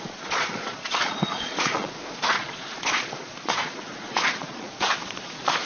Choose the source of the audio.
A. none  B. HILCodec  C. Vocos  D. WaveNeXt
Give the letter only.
C